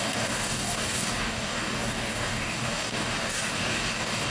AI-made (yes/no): yes